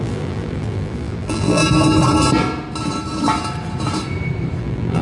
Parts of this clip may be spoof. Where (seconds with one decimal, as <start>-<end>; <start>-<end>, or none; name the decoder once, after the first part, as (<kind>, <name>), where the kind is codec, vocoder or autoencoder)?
0.0-1.6 (vocoder, BigVGAN v2); 4.6-5.0